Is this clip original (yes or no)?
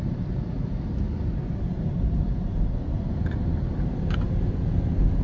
no